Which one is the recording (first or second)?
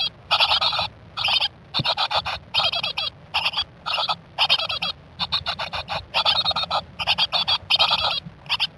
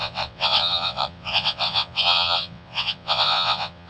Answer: first